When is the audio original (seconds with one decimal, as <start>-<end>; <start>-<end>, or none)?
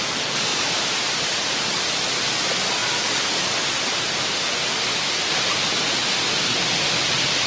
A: 0.0-0.5; 1.8-7.5